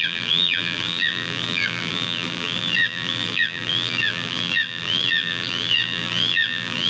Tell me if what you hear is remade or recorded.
remade